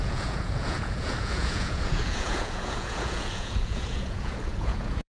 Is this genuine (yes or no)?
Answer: no